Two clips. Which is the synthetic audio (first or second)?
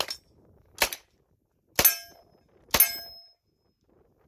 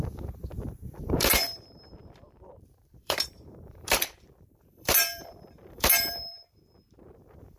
second